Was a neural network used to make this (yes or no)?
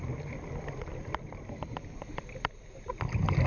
no